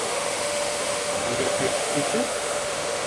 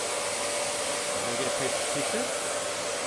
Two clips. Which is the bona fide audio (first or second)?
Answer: second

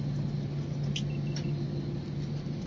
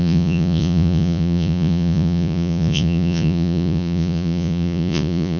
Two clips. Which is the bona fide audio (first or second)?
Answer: first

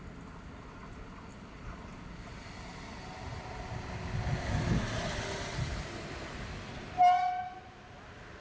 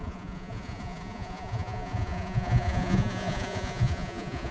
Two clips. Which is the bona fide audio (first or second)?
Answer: first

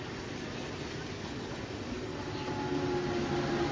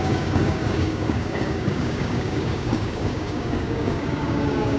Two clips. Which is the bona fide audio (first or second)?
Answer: first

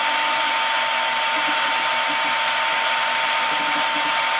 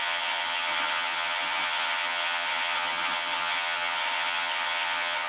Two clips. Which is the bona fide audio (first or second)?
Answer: first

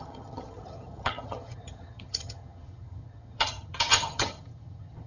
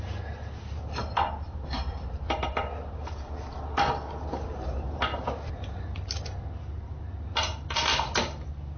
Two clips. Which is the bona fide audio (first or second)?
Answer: second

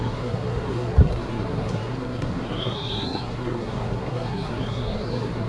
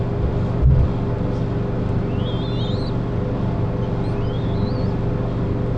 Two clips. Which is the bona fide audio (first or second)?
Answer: second